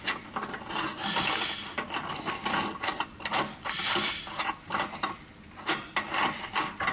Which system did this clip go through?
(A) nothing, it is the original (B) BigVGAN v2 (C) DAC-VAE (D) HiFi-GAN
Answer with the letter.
A